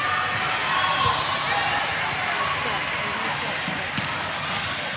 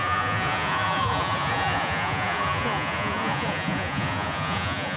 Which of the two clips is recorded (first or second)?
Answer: first